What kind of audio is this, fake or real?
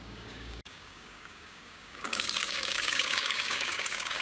fake